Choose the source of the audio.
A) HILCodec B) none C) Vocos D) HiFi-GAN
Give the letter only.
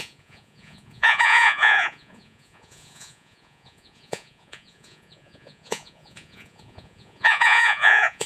C